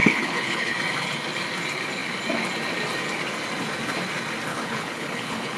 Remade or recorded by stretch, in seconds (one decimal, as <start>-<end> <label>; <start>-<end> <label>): 0.0-0.8 remade; 0.8-4.5 recorded; 4.5-5.6 remade